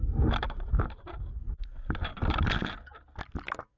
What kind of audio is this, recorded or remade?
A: recorded